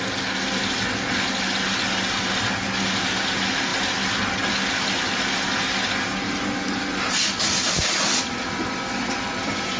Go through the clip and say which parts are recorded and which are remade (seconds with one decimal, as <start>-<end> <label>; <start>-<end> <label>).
0.0-9.8 recorded